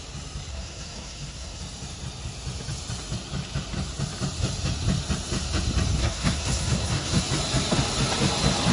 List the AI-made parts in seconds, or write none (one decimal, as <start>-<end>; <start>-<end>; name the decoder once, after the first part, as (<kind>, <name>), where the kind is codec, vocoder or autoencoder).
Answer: 0.5-1.6 (codec, SNAC); 6.0-7.2